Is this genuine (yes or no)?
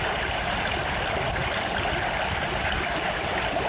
yes